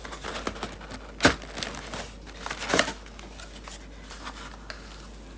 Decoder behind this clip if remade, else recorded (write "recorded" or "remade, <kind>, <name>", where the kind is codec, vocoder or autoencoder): recorded